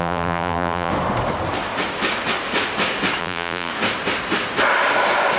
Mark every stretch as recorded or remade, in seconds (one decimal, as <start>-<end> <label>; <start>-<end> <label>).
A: 0.0-0.9 remade; 0.9-3.2 recorded; 3.2-3.7 remade; 3.7-5.4 recorded